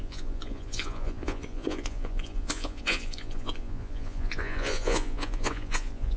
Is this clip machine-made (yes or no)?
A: yes